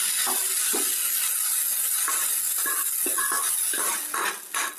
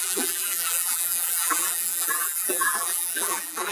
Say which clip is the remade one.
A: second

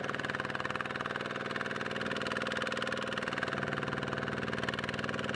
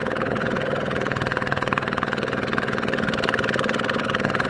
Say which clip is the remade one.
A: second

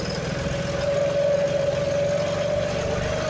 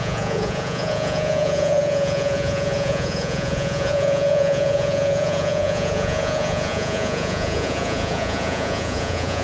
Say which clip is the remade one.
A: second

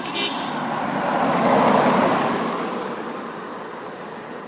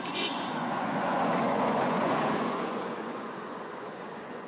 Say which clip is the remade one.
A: second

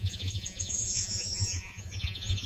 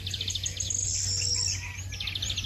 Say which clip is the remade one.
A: first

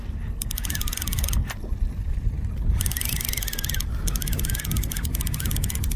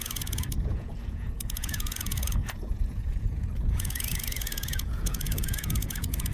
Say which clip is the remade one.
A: second